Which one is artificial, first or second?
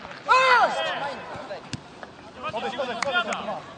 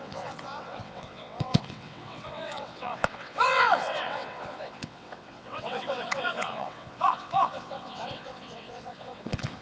second